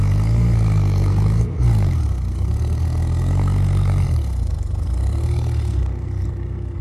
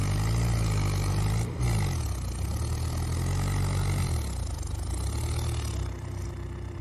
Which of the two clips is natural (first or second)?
second